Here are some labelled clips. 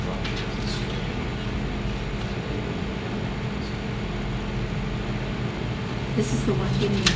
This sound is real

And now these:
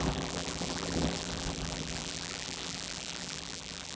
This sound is fake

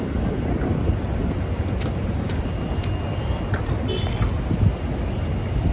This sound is real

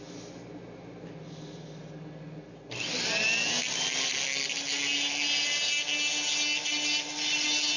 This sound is real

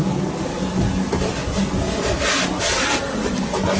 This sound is real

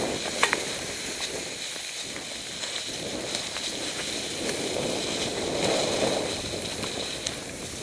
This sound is real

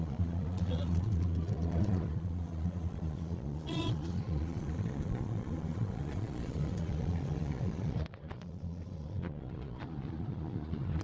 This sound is fake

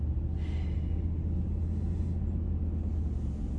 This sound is real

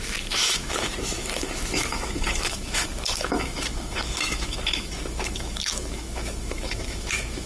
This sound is fake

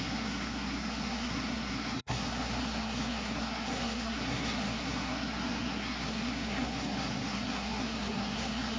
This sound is fake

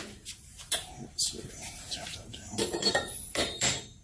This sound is fake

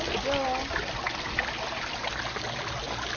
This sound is real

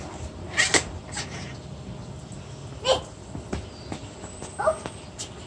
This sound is real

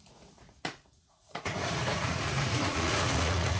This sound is fake